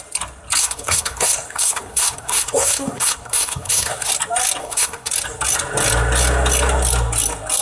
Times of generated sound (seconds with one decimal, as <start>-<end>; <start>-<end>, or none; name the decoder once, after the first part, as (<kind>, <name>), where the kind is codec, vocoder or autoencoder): 0.6-4.1 (codec, SNAC); 4.6-5.1